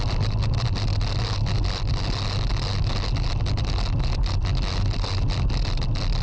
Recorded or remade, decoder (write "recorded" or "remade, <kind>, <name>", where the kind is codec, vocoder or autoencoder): recorded